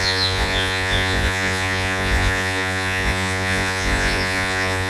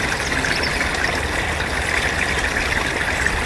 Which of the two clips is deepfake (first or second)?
first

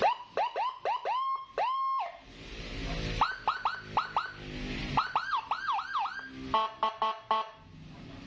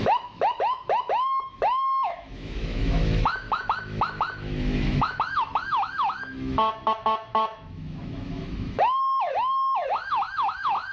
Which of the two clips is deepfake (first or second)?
second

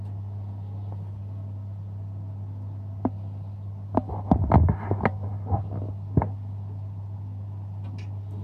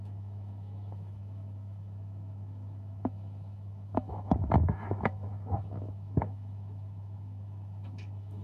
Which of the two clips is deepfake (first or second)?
second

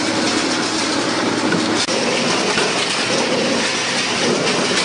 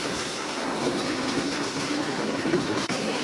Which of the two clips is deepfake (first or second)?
second